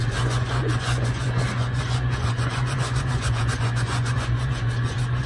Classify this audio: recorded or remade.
remade